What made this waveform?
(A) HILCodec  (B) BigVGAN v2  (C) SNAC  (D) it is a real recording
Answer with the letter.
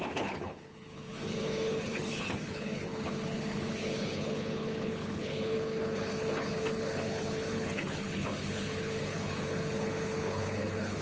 A